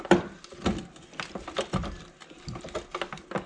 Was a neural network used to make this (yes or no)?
no